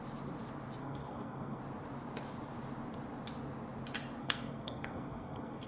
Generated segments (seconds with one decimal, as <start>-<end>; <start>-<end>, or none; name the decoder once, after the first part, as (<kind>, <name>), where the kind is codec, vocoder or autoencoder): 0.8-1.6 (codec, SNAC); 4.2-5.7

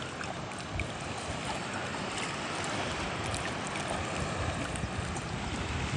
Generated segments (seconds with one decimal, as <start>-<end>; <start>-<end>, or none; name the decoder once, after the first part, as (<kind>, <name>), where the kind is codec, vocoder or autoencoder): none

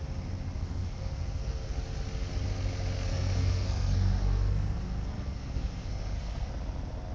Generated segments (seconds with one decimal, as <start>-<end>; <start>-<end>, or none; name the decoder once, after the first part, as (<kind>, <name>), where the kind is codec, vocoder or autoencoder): 0.6-1.7 (codec, SNAC); 3.1-6.5

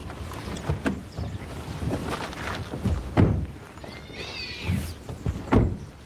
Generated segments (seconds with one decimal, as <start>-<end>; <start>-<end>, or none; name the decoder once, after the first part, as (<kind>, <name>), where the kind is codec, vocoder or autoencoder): none

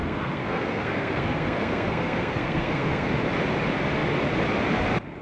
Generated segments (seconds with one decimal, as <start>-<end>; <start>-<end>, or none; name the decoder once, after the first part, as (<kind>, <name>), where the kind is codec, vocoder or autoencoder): 0.0-3.1 (codec, SNAC)